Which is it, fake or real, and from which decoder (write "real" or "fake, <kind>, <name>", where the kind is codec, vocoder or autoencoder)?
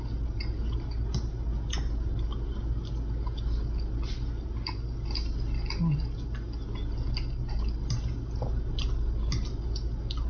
real